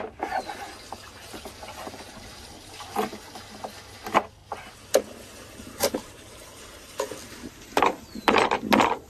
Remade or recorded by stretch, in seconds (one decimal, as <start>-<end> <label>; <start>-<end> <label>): 0.0-9.1 recorded